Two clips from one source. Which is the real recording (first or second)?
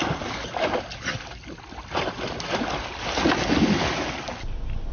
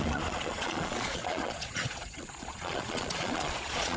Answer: first